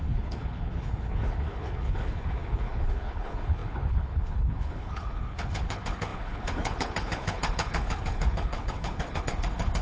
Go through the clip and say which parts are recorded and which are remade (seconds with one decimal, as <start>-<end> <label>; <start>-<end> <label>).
0.0-9.8 remade